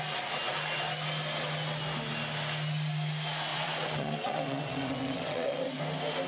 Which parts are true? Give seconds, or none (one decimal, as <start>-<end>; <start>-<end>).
0.0-3.5; 5.8-6.3

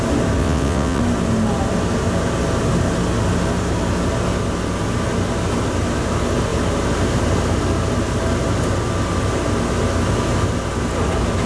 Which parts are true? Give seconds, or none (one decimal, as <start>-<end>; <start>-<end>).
0.0-0.4; 1.0-11.5

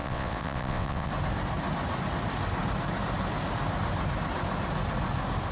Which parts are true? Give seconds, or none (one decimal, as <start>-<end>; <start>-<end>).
1.1-5.5

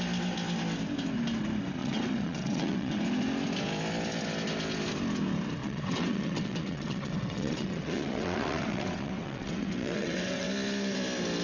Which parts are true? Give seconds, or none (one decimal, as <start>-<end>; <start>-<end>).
0.0-1.8; 3.0-5.6; 10.5-11.4

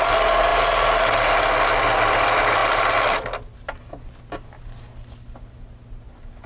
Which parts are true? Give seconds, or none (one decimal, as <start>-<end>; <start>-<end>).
0.0-6.5